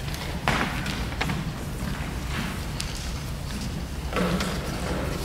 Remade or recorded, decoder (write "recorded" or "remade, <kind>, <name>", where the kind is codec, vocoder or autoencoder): recorded